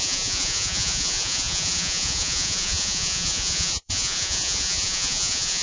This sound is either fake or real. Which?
fake